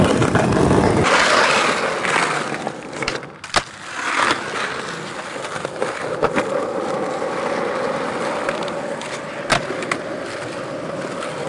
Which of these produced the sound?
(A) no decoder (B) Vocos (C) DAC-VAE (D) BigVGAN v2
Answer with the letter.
A